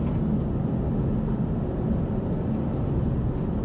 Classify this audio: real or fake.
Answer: real